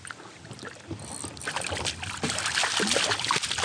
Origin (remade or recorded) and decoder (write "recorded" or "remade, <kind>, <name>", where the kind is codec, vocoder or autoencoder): recorded